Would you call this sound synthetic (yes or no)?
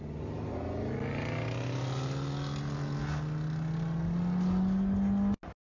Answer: no